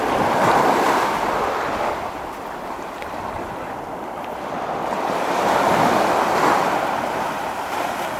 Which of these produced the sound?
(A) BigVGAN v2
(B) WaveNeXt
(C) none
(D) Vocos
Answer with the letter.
A